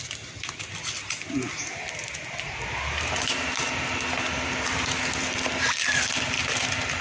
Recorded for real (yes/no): yes